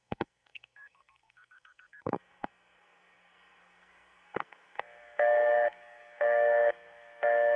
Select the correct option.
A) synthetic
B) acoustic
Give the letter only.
A